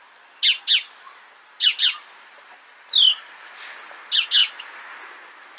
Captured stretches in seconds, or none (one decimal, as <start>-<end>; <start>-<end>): 0.0-5.6

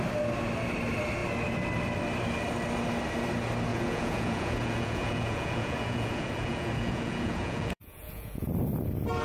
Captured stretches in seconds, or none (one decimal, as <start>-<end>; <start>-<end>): 0.0-3.7; 8.5-9.2

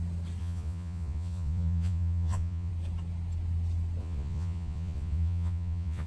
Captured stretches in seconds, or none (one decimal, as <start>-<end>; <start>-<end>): 0.0-0.4; 2.7-4.0

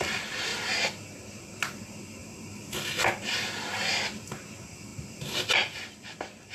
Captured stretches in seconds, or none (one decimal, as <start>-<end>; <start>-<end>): 0.0-6.5